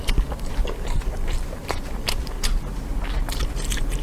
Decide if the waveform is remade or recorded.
remade